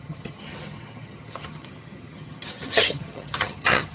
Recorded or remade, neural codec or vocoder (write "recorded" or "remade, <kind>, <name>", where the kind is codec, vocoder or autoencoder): remade, vocoder, HiFi-GAN